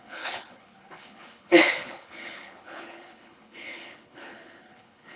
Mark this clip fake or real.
fake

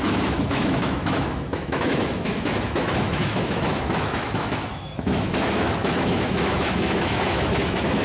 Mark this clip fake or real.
fake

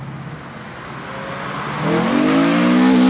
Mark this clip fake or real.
real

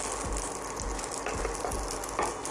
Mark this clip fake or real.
real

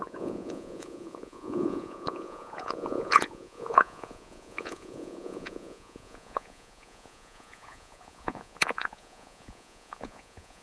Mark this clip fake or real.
fake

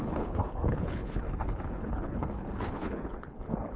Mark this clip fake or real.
fake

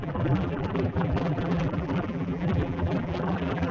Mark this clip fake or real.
fake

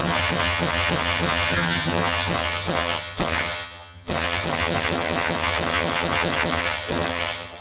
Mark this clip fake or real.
fake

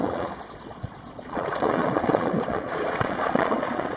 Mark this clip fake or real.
fake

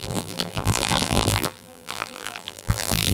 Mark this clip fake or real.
fake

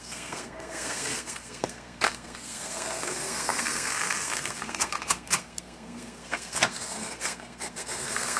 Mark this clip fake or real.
fake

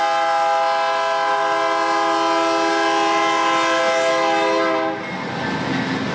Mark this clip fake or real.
real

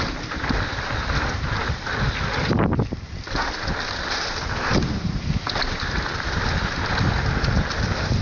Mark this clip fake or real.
real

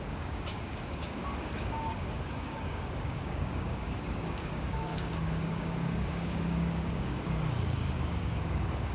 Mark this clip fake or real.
fake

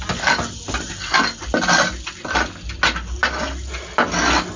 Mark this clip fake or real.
real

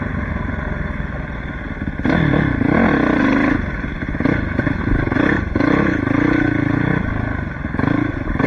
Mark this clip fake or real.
real